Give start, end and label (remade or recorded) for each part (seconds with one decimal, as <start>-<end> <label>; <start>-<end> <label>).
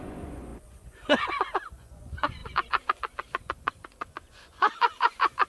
0.0-5.5 remade